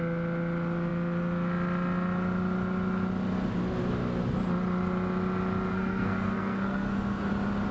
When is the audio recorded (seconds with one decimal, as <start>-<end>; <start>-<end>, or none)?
0.0-5.7; 7.3-7.7